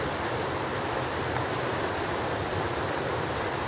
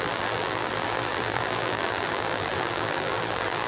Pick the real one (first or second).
first